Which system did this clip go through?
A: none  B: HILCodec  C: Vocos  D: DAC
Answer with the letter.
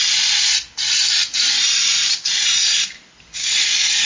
A